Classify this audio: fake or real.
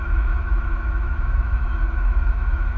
fake